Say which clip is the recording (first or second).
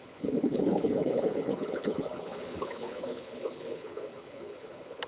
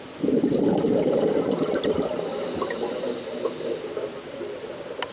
second